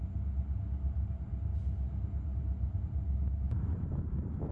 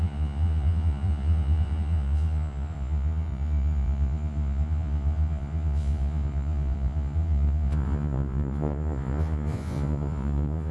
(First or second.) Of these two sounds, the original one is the first